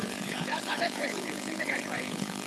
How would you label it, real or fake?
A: fake